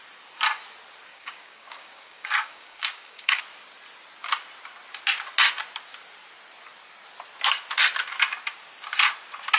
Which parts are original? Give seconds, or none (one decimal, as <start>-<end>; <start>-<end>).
0.0-1.1; 3.4-9.6